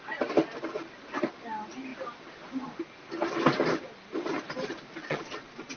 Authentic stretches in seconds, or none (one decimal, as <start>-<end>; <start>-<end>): 0.0-5.0